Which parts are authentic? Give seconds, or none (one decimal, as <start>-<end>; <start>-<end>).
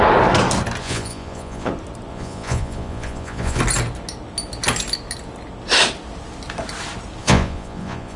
0.0-0.8; 1.7-2.1; 3.6-7.2